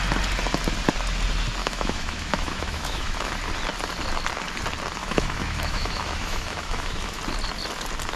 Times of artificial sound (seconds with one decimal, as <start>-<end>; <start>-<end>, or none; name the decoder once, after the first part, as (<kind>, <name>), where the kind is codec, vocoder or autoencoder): 1.6-3.3 (autoencoder, DAC-VAE); 5.0-7.2